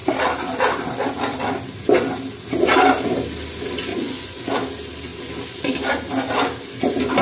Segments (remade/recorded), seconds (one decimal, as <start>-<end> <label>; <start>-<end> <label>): 0.0-3.9 recorded; 3.9-4.5 remade; 4.5-7.2 recorded